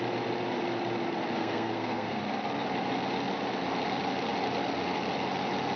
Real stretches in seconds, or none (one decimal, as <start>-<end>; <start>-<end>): 0.0-1.4; 2.2-5.8